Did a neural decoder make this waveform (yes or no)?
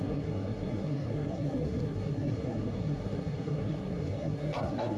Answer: yes